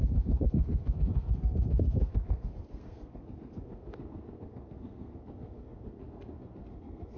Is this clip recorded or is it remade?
remade